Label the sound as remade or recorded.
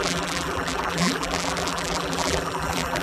remade